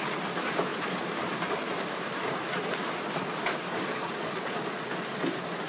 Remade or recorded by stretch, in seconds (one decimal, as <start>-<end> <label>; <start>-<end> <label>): 0.0-0.7 recorded; 0.7-4.1 remade; 4.1-5.7 recorded